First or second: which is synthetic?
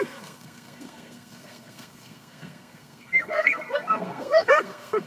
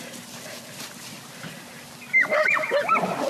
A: first